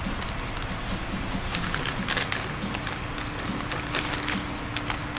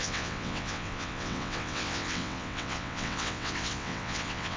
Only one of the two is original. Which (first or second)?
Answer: first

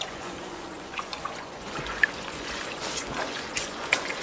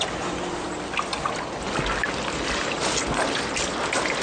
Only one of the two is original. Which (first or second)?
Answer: second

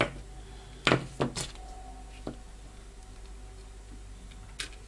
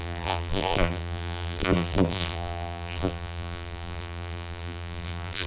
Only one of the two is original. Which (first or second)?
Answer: first